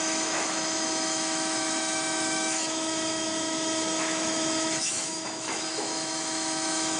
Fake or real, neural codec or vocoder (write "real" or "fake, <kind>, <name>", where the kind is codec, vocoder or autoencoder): fake, autoencoder, DAC-VAE